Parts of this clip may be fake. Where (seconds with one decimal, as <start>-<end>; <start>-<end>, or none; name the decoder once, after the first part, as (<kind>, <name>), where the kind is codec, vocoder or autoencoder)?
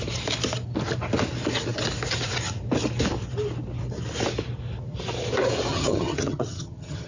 5.7-7.1 (vocoder, HiFi-GAN)